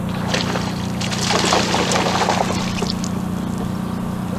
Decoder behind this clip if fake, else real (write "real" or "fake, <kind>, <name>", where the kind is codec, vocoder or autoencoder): real